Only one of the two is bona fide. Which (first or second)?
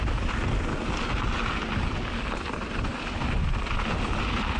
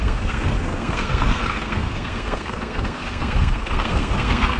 first